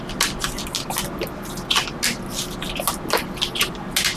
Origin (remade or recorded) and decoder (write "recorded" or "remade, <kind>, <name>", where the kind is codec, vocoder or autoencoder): recorded